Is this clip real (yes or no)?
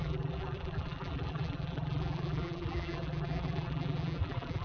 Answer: no